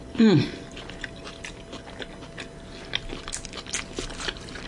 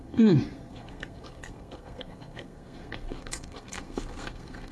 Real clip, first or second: first